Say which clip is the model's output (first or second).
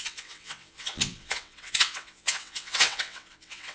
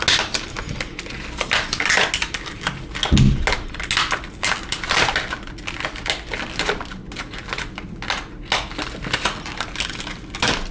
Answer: first